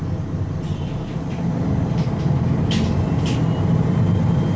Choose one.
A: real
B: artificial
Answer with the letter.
A